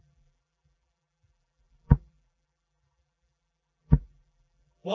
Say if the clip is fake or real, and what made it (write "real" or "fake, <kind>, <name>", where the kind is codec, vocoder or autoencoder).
fake, vocoder, BigVGAN v2